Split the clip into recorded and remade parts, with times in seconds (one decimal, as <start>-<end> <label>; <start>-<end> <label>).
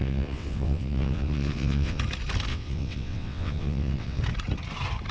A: 0.0-2.0 remade; 2.0-2.5 recorded; 2.5-4.2 remade; 4.2-5.1 recorded